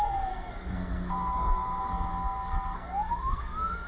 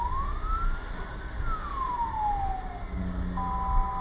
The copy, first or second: first